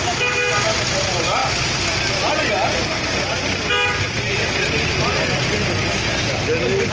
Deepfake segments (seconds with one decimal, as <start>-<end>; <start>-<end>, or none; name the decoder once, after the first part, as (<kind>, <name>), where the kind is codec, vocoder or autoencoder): none